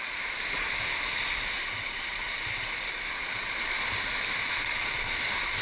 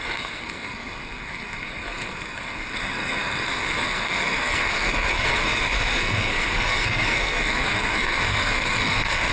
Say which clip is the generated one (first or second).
second